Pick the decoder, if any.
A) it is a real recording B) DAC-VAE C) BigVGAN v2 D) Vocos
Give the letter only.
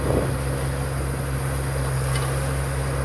A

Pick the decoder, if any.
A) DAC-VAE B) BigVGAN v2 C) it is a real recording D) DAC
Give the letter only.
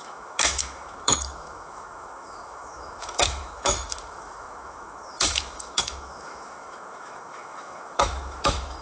A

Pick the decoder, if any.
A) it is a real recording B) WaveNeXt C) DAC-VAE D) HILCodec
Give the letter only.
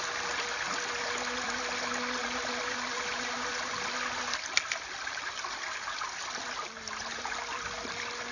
A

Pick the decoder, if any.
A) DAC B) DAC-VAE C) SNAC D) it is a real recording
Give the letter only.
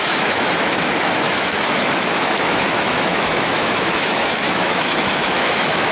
B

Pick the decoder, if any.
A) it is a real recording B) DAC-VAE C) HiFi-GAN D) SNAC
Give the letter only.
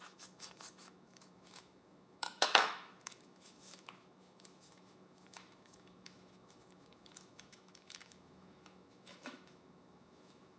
B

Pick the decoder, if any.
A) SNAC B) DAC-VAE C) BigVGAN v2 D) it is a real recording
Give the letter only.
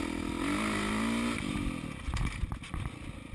D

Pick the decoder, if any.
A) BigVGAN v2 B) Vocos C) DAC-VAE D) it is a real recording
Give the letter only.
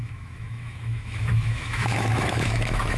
C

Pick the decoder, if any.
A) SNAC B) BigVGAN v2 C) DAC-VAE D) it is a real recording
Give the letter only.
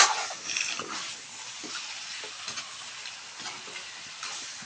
D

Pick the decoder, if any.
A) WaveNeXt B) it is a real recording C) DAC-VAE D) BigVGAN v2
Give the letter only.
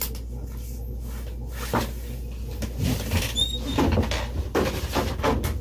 B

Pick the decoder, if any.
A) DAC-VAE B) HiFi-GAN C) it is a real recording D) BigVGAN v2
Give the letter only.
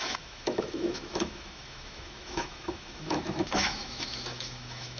A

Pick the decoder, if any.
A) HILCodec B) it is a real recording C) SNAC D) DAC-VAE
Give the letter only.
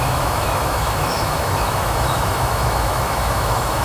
D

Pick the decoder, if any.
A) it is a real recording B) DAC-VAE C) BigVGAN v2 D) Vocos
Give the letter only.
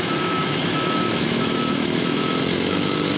B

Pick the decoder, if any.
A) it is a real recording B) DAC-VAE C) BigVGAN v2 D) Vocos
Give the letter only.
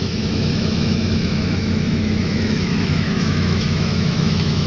B